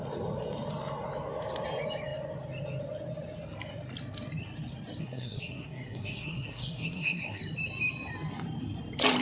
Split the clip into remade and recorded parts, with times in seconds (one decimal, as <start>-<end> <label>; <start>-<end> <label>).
0.0-5.0 recorded; 5.0-7.4 remade; 7.4-9.2 recorded

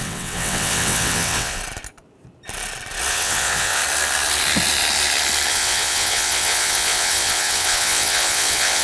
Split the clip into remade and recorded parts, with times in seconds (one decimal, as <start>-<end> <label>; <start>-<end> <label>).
0.0-1.6 remade; 1.6-3.1 recorded; 3.1-3.8 remade; 3.8-5.5 recorded; 5.5-8.8 remade